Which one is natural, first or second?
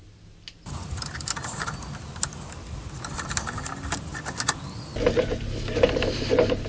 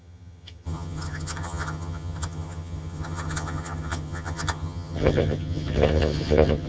first